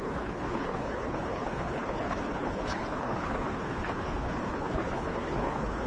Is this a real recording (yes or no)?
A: no